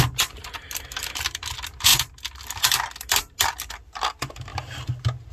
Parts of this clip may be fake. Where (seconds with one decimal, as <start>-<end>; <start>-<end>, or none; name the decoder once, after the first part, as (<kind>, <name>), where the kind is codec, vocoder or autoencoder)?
none